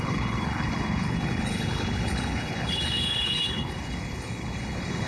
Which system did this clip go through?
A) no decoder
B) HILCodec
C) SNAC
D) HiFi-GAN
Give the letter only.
B